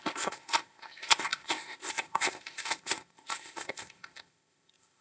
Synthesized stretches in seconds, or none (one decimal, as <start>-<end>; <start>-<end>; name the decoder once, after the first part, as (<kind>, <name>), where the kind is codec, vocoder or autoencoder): 0.0-5.0 (codec, ZipCodec)